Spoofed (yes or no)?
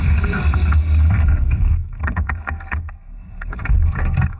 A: yes